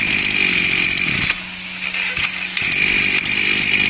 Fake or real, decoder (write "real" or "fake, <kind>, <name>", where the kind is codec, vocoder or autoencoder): real